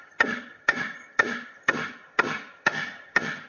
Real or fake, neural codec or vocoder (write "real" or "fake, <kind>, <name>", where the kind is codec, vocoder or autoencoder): fake, vocoder, HiFi-GAN